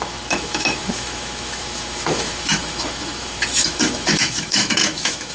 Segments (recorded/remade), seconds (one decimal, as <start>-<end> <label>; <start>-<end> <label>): 0.0-5.3 remade